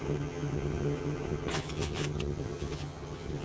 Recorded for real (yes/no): no